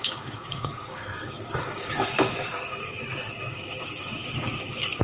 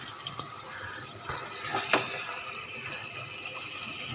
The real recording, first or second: second